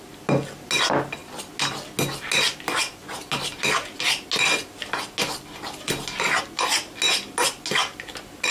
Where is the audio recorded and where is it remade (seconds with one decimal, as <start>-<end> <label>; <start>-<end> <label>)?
0.0-8.5 recorded